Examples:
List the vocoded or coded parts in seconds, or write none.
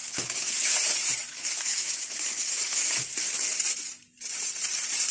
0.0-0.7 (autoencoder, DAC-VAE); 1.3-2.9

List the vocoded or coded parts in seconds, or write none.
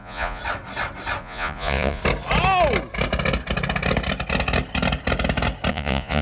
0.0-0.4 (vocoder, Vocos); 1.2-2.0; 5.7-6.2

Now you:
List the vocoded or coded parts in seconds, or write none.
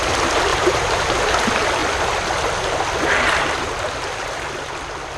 0.5-1.0 (vocoder, BigVGAN v2)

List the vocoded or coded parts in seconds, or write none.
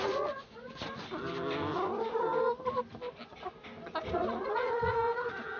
0.0-0.7 (vocoder, Vocos); 4.1-5.6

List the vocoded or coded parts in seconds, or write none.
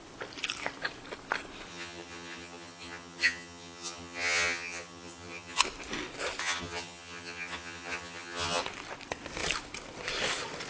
1.7-5.6 (vocoder, HiFi-GAN); 6.4-8.6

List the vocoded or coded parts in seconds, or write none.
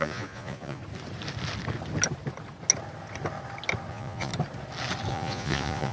0.0-0.8 (vocoder, Vocos); 3.9-4.3; 5.1-5.9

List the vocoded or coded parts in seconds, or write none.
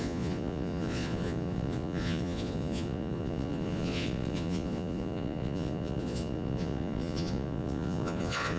0.0-8.6 (vocoder, Vocos)